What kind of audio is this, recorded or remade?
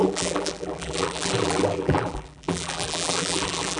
remade